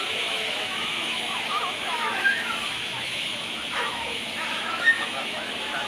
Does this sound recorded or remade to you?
remade